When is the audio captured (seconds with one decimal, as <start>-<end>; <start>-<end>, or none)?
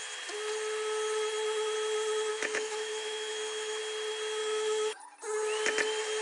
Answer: 0.0-2.3; 3.8-4.4; 5.0-6.2